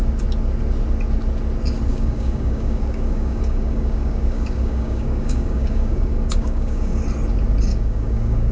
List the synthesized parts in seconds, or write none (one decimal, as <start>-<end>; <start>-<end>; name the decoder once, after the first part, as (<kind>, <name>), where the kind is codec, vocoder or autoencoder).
1.9-7.0 (codec, DAC); 7.7-8.5